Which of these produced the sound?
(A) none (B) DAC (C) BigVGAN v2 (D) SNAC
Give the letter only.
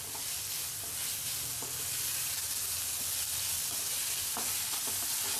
A